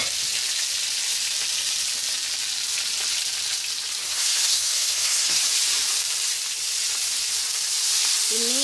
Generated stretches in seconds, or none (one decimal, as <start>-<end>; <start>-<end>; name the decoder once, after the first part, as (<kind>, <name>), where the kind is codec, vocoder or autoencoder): 4.0-5.4 (codec, SNAC)